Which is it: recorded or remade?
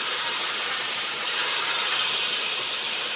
remade